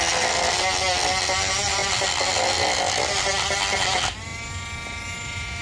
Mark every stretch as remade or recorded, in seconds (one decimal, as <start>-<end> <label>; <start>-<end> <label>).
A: 0.0-5.6 recorded